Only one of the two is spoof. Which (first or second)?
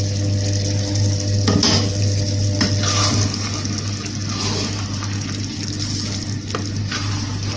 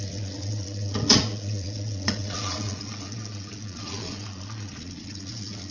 second